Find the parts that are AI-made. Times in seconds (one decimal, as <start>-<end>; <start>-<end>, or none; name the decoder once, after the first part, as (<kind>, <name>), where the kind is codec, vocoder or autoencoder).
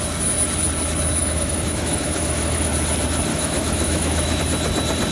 1.2-2.7 (autoencoder, DAC-VAE); 3.3-4.4